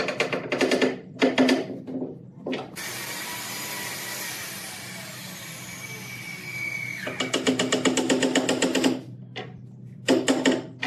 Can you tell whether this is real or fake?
real